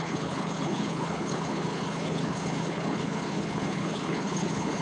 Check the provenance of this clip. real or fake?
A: fake